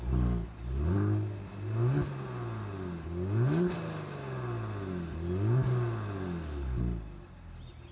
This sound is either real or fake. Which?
real